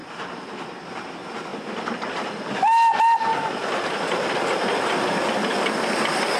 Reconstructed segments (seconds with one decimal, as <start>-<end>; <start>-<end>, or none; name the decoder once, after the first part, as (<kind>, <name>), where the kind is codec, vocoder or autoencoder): 0.0-0.8 (vocoder, BigVGAN v2)